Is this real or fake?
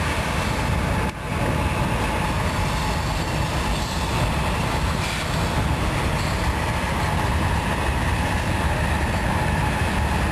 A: real